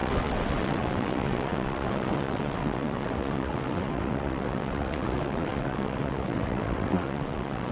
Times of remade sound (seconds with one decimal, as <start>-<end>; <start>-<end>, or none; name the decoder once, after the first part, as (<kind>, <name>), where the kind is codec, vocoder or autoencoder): 0.0-7.7 (vocoder, WaveNeXt)